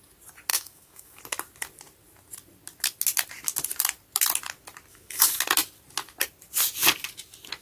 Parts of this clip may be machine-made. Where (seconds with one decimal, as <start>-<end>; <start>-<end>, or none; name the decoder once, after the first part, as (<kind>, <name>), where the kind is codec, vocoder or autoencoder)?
0.5-1.2 (autoencoder, DAC-VAE); 4.9-5.4